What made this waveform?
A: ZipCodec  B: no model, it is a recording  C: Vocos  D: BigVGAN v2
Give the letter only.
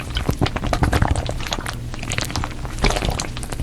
D